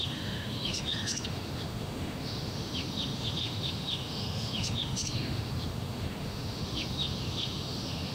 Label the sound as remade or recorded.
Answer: remade